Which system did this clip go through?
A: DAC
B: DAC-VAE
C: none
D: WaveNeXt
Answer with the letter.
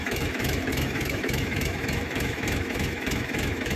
B